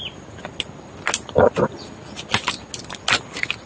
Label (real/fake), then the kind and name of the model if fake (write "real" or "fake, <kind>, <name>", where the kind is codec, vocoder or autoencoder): real